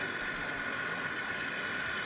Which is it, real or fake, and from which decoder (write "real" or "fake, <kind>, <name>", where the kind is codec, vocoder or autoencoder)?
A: real